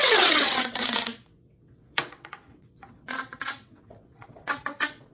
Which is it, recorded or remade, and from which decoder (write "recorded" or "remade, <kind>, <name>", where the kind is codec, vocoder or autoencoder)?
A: remade, vocoder, WaveNeXt